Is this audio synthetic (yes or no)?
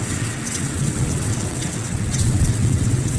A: yes